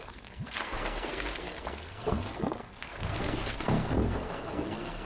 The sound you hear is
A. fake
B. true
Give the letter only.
A